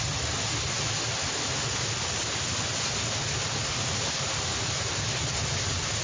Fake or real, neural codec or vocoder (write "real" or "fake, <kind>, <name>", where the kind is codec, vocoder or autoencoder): real